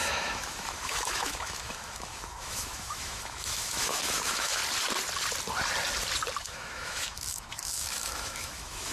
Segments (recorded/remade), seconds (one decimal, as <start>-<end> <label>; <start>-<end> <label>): 0.0-4.6 remade; 4.6-6.4 recorded; 6.4-8.9 remade